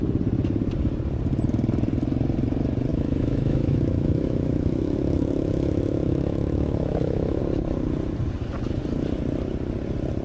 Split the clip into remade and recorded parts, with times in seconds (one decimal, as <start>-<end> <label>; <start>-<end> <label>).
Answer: 0.0-2.9 recorded; 2.9-7.4 remade; 7.4-10.2 recorded